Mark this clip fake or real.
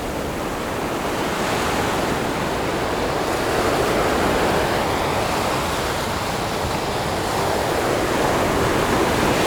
real